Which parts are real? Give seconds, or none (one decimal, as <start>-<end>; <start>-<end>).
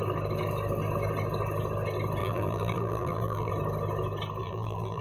0.0-2.2; 3.5-4.4